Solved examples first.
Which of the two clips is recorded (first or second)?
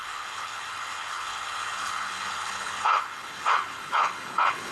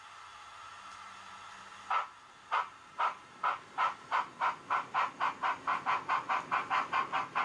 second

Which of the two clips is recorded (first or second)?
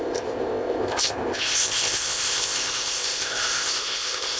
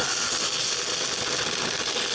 second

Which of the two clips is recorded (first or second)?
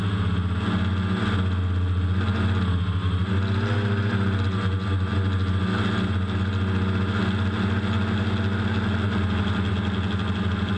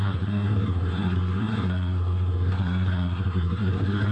first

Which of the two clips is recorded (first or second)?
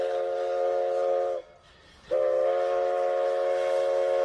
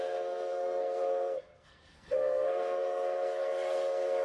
first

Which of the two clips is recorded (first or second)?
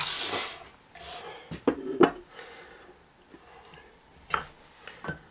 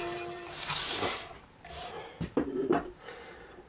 first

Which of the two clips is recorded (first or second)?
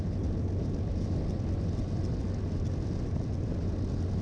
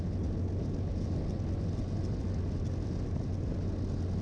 second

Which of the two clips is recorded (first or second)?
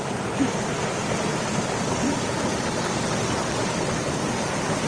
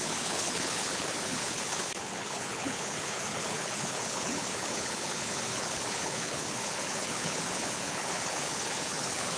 first